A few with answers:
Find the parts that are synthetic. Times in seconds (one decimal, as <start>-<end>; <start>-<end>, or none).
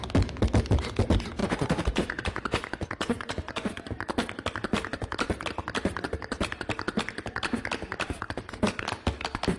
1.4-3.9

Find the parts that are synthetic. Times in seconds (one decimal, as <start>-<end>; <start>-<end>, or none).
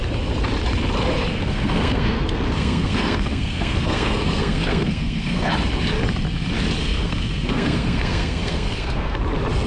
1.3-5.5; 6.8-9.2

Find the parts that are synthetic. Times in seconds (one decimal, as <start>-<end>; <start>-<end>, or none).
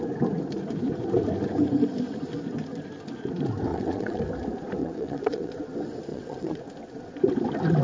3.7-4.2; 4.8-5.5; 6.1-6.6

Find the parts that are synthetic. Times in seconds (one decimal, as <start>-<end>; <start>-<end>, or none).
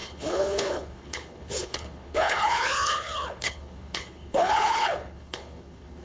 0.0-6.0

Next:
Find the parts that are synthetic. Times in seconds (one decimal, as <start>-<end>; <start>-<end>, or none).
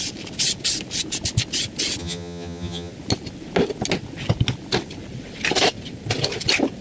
2.0-2.9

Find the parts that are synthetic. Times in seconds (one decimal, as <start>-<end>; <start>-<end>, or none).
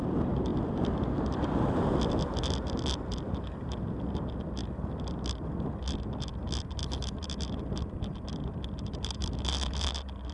none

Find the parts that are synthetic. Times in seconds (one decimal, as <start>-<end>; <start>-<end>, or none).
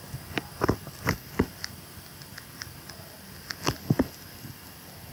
none